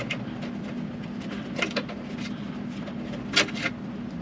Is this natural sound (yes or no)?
yes